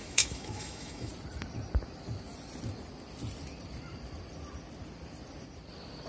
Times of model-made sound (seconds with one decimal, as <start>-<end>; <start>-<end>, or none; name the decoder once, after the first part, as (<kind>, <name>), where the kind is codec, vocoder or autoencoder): 0.0-1.1 (autoencoder, DAC-VAE)